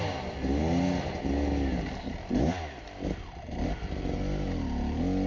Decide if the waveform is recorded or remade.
recorded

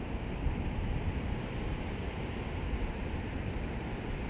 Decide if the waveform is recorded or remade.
recorded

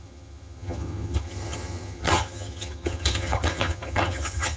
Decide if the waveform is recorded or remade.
remade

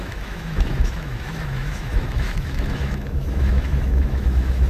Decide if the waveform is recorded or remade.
remade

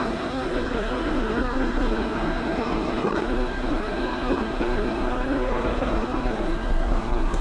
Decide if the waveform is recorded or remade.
remade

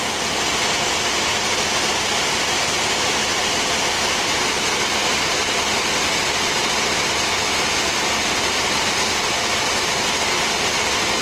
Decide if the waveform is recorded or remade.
recorded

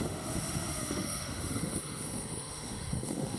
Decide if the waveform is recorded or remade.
remade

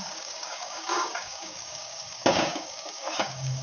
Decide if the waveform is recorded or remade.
remade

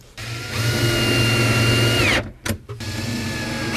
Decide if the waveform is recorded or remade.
recorded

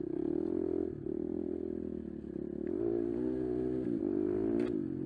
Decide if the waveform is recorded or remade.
recorded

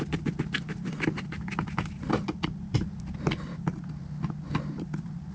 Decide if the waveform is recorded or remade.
recorded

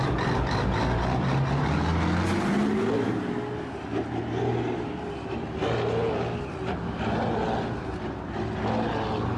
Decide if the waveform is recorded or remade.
recorded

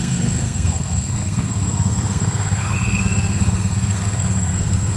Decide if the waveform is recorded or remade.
remade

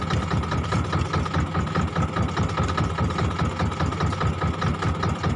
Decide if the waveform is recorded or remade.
recorded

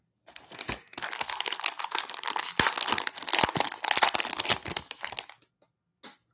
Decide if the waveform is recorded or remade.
recorded